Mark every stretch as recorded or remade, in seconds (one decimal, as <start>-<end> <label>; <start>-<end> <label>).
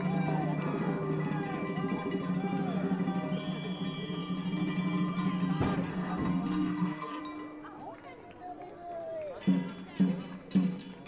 0.0-5.9 recorded; 5.9-7.2 remade; 7.2-11.1 recorded